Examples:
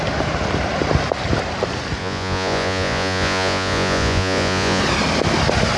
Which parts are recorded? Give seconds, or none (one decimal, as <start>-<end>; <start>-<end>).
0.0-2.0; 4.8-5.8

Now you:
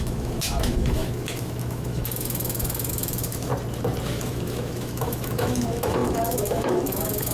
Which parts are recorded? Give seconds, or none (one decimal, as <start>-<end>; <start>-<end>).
3.5-4.0

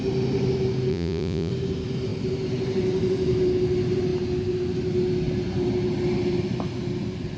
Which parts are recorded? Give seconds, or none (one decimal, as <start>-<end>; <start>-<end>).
0.0-0.9; 1.5-7.4

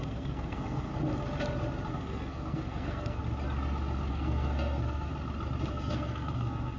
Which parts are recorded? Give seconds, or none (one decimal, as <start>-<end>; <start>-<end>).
0.9-1.9; 3.2-4.1; 5.1-5.7

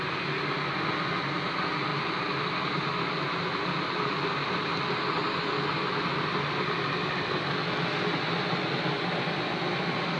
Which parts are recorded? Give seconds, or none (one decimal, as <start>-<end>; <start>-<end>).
0.0-10.2

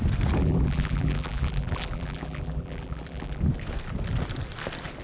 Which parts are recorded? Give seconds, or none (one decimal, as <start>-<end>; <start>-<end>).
0.0-0.4; 3.4-5.0

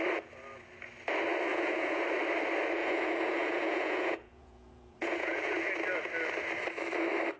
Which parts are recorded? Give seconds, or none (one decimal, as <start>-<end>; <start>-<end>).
0.0-1.5; 2.0-2.8; 5.7-7.4